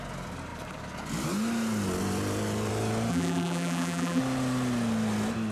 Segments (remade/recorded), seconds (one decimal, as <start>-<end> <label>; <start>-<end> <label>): 0.0-3.1 recorded; 3.1-4.2 remade; 4.2-5.5 recorded